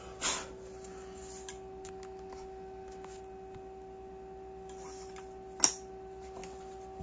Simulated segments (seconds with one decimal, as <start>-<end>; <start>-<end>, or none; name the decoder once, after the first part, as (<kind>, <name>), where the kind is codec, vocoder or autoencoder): none